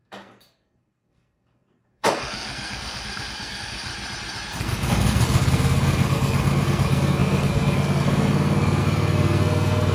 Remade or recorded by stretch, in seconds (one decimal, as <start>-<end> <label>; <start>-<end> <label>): 0.0-3.9 remade; 3.9-4.5 recorded; 4.5-9.9 remade